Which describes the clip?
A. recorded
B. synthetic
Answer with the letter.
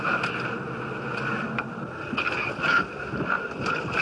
A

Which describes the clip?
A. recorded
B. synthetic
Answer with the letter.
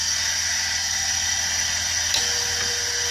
A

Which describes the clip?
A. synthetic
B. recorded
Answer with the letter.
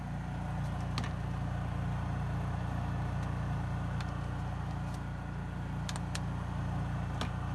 B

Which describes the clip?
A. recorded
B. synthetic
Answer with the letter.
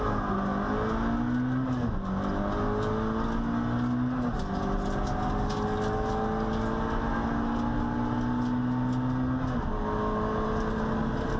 A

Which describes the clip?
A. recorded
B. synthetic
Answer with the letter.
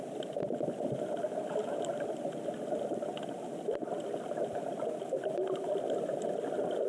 A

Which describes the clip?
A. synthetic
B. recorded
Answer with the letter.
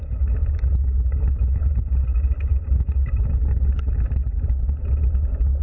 A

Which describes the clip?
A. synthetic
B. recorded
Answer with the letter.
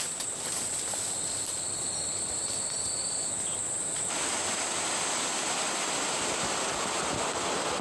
A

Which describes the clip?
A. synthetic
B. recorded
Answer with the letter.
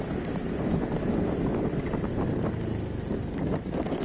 B